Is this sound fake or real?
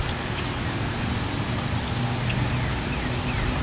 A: real